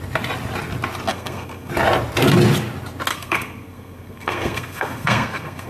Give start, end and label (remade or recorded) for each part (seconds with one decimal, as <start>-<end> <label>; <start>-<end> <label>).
0.0-1.1 recorded; 1.1-1.7 remade; 1.7-3.1 recorded; 3.1-5.7 remade